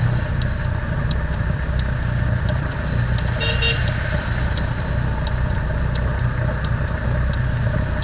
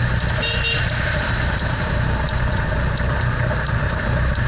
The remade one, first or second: second